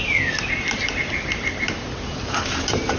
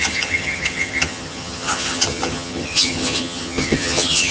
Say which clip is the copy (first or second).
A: second